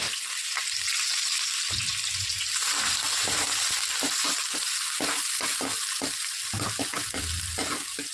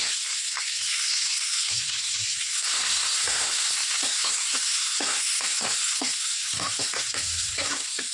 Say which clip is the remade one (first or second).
second